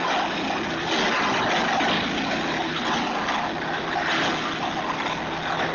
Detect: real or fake real